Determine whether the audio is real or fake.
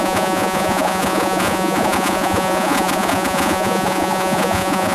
fake